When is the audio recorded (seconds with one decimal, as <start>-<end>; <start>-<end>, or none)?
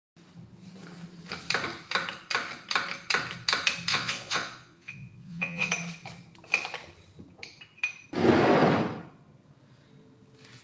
0.0-3.9; 5.7-10.6